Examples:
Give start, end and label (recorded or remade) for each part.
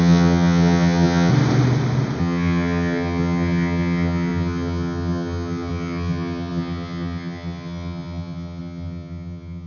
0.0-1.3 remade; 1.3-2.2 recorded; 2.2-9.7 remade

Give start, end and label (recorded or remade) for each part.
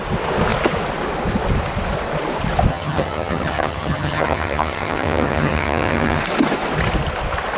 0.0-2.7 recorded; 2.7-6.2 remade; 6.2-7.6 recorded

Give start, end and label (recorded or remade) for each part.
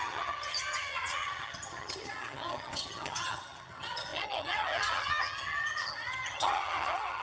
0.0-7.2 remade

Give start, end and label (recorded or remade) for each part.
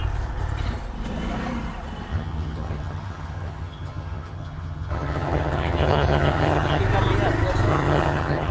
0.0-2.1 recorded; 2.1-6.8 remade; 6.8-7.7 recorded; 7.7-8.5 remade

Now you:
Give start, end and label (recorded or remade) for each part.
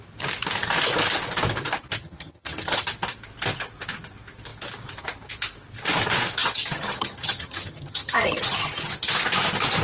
0.0-2.0 recorded; 2.0-2.9 remade; 2.9-6.4 recorded; 6.4-9.1 remade; 9.1-9.8 recorded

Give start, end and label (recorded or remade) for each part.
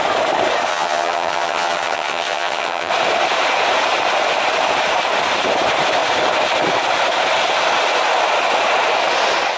0.0-0.7 recorded; 0.7-2.9 remade; 2.9-9.6 recorded